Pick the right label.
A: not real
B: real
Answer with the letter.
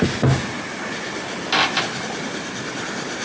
B